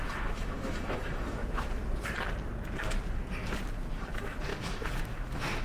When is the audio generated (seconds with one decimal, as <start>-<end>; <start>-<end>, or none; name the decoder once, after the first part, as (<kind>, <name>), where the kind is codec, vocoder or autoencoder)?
0.0-1.8 (autoencoder, DAC-VAE); 4.0-5.6